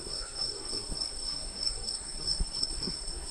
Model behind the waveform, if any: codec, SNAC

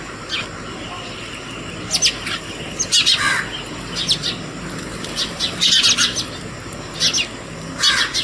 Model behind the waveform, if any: none